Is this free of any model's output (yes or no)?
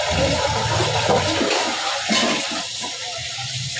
yes